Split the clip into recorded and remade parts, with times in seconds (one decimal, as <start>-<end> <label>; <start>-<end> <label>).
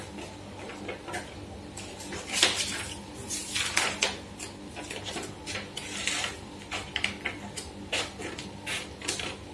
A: 0.0-9.5 recorded